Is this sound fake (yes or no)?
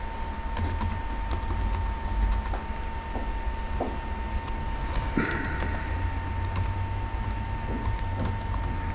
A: no